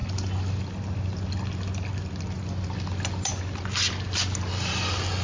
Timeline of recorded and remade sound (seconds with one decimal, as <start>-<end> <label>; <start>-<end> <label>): 0.0-5.2 recorded